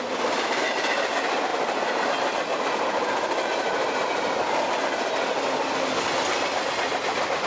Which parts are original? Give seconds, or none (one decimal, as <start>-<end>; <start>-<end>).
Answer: 0.0-7.5